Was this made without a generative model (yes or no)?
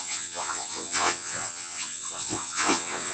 no